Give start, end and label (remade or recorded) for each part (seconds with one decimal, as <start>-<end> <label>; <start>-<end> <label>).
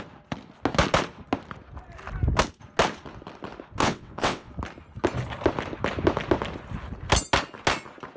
0.0-3.8 recorded; 3.8-4.5 remade; 4.5-8.2 recorded